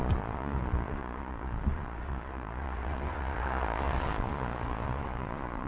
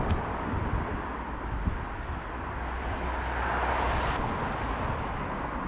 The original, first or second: second